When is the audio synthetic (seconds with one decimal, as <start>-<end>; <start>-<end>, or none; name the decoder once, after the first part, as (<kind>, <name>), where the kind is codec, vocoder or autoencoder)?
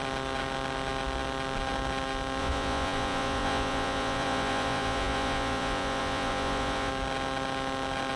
2.4-6.9 (vocoder, Vocos)